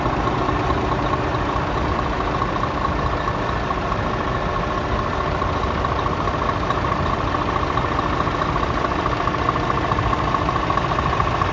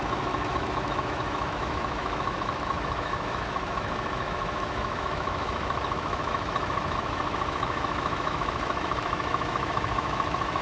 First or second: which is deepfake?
second